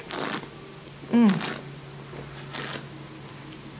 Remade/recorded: recorded